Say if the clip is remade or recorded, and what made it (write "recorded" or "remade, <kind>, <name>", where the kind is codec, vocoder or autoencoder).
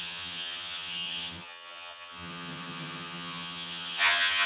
remade, vocoder, HiFi-GAN